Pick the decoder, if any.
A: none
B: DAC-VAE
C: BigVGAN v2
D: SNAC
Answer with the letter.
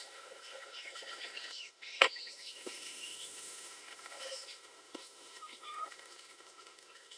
B